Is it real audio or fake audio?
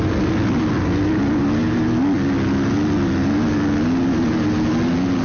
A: real